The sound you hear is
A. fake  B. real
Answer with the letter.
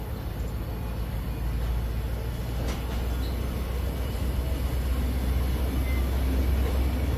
B